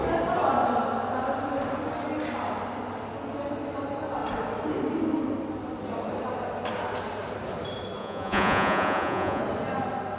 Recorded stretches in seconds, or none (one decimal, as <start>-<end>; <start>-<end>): 0.0-8.0; 9.4-10.2